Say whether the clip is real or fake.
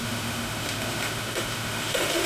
fake